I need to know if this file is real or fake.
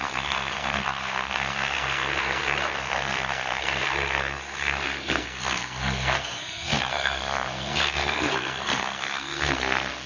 fake